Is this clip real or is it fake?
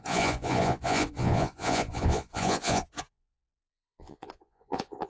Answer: fake